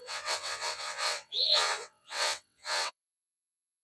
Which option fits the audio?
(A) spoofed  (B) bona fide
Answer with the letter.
A